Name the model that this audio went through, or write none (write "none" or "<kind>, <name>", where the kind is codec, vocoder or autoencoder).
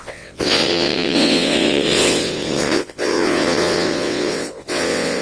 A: vocoder, WaveNeXt